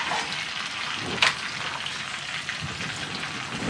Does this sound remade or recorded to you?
recorded